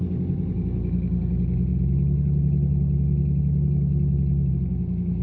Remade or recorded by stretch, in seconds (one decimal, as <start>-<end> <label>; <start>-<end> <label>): 0.0-5.2 recorded

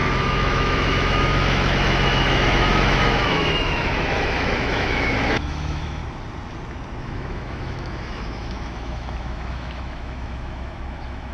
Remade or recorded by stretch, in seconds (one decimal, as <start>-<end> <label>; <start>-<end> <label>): 0.0-6.0 remade; 6.0-7.0 recorded; 7.0-11.3 remade

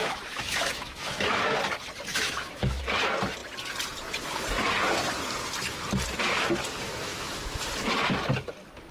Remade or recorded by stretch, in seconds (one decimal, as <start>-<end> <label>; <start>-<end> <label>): 0.0-1.4 remade; 1.4-2.1 recorded; 2.1-2.8 remade; 2.8-8.9 recorded